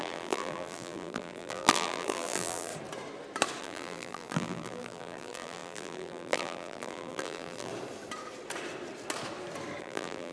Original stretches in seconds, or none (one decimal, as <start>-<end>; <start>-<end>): 2.7-3.6; 7.7-9.8